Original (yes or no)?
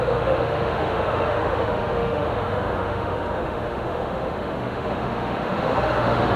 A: no